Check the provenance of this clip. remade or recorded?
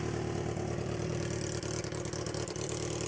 remade